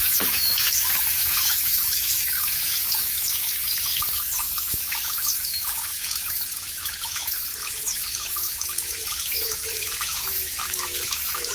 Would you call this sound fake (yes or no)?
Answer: yes